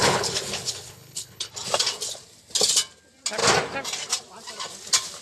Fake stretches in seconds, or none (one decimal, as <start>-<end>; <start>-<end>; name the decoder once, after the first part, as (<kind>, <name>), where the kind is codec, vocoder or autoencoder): 0.0-1.5 (codec, HILCodec)